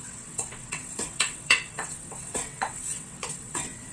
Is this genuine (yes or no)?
no